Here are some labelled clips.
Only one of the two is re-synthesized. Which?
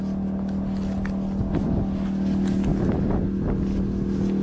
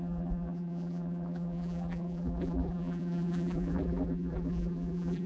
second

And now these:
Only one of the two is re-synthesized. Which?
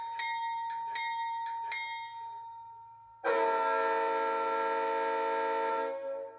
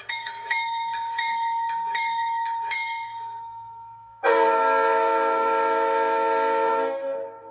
second